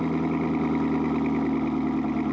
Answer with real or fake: real